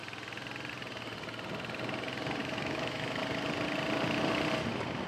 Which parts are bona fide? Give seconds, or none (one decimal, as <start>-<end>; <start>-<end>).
0.0-2.4; 3.2-5.1